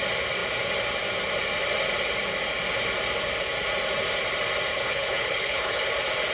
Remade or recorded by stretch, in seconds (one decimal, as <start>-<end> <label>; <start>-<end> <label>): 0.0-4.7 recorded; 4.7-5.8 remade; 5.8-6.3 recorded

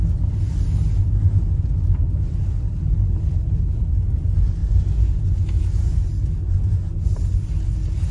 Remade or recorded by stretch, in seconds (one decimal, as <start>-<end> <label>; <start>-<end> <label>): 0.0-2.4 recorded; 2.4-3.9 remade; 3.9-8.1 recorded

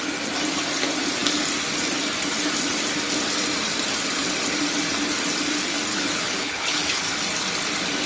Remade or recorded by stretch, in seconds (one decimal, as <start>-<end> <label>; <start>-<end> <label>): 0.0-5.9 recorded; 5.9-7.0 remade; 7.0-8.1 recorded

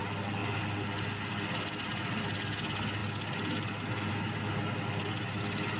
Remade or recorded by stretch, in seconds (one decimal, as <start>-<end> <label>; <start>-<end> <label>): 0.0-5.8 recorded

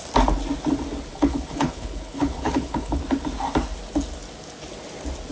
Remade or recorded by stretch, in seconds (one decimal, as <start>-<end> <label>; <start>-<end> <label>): 0.0-1.1 recorded; 1.1-3.0 remade; 3.0-5.3 recorded